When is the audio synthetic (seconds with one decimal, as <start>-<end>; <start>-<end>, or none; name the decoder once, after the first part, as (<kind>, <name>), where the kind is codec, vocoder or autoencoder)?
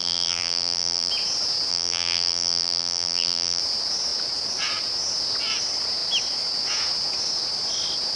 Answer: 0.0-1.1 (vocoder, BigVGAN v2); 1.7-3.6